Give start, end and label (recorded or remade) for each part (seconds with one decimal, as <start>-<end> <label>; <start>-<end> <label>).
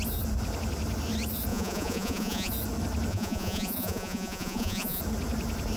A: 0.0-1.5 recorded; 1.5-2.5 remade; 2.5-3.1 recorded; 3.1-5.0 remade; 5.0-5.8 recorded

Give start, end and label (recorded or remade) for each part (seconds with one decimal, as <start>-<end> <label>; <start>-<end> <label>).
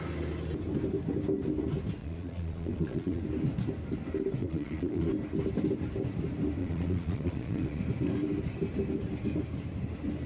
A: 0.0-2.0 recorded; 2.0-3.2 remade; 3.2-4.4 recorded; 4.4-5.1 remade; 5.1-6.6 recorded; 6.6-7.8 remade; 7.8-10.3 recorded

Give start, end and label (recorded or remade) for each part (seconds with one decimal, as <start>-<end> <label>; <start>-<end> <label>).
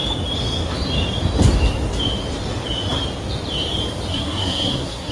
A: 0.0-4.1 recorded; 4.1-5.1 remade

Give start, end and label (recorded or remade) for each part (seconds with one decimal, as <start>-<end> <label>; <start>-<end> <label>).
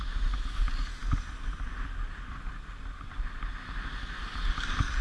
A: 0.0-5.0 recorded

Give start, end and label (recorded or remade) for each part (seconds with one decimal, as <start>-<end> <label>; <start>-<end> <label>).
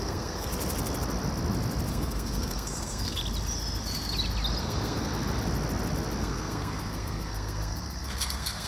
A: 0.0-0.5 remade; 0.5-1.9 recorded; 1.9-3.2 remade; 3.2-4.6 recorded; 4.6-5.1 remade; 5.1-6.2 recorded; 6.2-8.7 remade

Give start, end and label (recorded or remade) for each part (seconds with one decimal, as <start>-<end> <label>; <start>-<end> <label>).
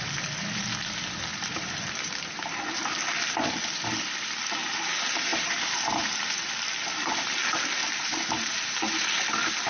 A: 0.0-1.3 recorded; 1.3-2.8 remade; 2.8-5.3 recorded; 5.3-6.5 remade; 6.5-7.8 recorded; 7.8-8.9 remade; 8.9-9.7 recorded